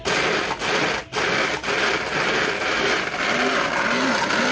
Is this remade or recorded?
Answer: recorded